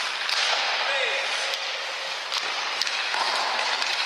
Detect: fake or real fake